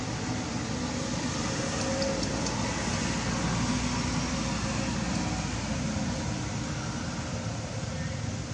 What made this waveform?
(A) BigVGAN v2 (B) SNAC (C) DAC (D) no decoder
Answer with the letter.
D